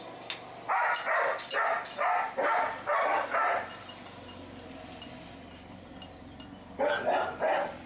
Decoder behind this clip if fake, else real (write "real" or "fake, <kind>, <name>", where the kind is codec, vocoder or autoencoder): real